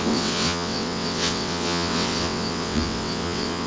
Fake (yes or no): yes